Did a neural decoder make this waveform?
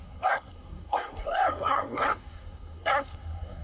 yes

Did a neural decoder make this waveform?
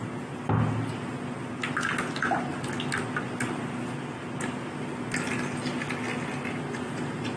no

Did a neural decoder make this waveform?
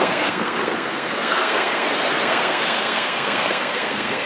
yes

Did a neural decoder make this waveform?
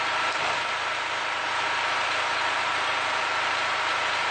no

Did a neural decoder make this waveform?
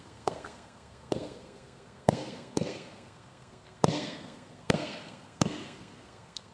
yes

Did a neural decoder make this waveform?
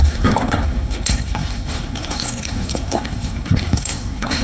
yes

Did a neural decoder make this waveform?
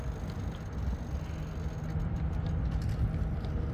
no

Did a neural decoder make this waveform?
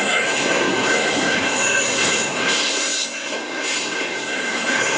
yes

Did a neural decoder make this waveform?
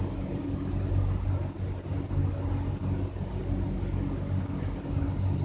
no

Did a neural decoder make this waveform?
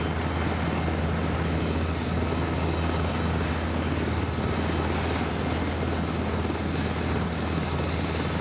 no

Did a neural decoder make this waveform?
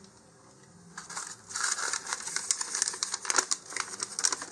no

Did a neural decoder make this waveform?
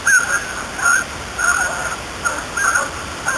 no